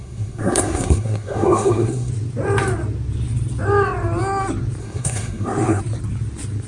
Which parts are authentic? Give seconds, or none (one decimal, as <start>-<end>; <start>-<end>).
2.1-4.8; 5.8-6.7